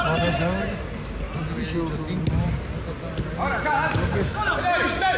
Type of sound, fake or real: real